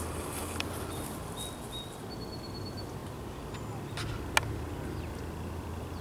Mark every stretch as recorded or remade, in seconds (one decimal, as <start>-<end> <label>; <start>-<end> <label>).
0.0-6.0 recorded